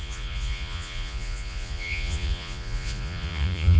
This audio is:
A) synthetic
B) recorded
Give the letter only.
A